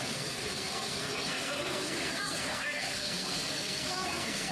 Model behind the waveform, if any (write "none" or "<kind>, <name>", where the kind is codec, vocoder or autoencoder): codec, SNAC